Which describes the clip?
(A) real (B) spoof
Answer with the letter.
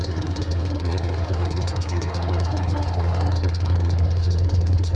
B